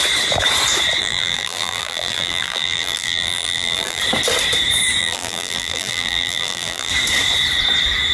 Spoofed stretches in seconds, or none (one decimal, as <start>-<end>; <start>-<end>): 1.0-4.0; 5.0-6.9